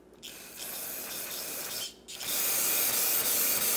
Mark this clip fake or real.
real